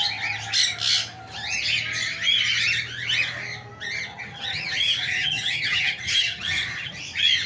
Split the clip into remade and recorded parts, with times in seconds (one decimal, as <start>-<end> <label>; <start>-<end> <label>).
0.0-4.1 recorded; 4.1-7.0 remade; 7.0-7.5 recorded